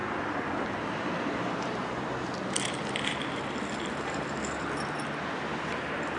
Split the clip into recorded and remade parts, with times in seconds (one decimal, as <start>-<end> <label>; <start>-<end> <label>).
0.0-3.7 remade; 3.7-6.2 recorded